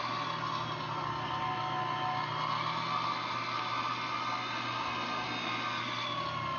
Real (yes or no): yes